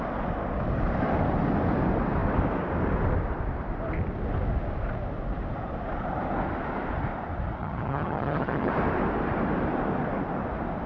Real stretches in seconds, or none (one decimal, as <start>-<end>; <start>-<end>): 0.0-7.6; 8.7-10.9